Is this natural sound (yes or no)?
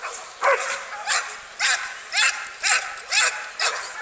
yes